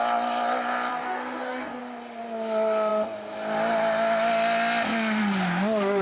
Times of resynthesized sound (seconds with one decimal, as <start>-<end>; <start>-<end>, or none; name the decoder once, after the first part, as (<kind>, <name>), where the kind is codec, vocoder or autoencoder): 0.9-1.8 (codec, DAC)